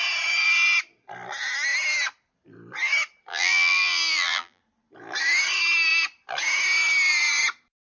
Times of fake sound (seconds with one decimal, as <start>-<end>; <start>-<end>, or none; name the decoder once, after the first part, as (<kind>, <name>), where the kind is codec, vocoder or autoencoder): 3.3-4.6 (vocoder, BigVGAN v2)